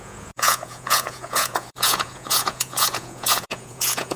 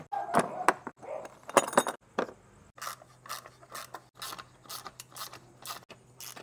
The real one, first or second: second